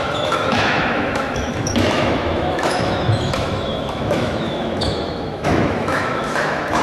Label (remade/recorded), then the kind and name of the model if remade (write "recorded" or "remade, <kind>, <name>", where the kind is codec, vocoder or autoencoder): remade, autoencoder, DAC-VAE